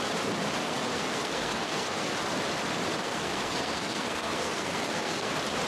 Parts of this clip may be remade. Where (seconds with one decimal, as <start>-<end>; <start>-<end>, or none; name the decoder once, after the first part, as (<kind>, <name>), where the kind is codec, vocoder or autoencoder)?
0.6-2.1 (codec, SNAC); 3.0-5.3